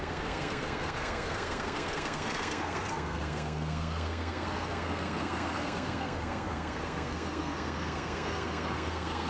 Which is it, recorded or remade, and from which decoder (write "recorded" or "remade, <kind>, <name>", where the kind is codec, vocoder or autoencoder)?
remade, codec, SNAC